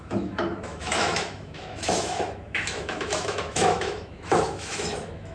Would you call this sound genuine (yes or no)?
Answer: no